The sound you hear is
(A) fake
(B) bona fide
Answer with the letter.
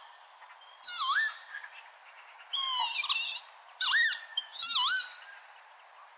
B